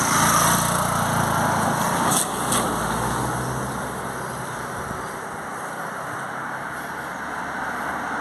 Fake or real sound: real